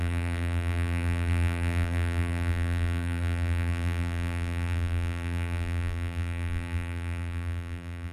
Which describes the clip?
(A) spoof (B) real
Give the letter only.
A